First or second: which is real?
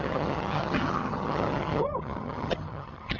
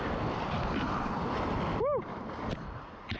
second